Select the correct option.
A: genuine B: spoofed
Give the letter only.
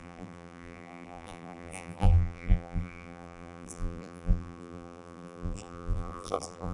B